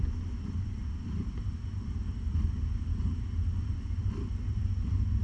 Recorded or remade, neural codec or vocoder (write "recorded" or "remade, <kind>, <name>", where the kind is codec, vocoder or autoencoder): recorded